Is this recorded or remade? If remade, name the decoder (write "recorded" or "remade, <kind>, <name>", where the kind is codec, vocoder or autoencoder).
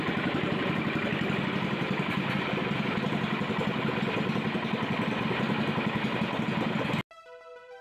recorded